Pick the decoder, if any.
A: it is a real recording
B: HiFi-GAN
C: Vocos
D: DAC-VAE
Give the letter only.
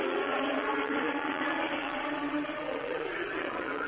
C